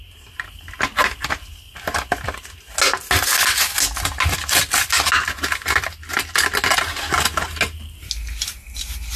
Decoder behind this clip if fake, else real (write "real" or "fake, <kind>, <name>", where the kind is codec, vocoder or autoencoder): real